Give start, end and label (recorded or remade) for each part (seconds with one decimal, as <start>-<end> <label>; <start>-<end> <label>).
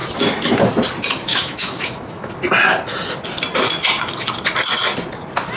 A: 0.0-1.3 recorded; 1.3-2.3 remade; 2.3-5.6 recorded